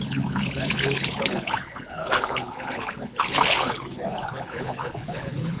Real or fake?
fake